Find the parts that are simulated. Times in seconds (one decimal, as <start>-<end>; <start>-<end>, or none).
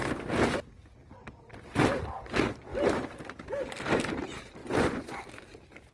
4.6-5.2